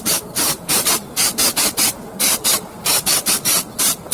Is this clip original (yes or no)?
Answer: no